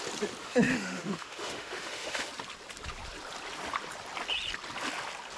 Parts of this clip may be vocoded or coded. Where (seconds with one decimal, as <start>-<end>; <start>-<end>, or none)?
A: 0.4-2.3